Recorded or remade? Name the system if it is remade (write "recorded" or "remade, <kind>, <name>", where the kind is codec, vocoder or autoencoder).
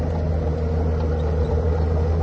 recorded